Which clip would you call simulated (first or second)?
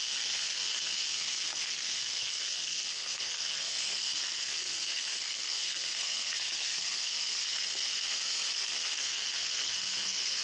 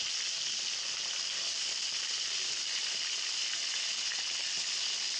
first